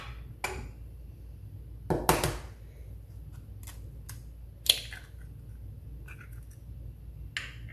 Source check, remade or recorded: recorded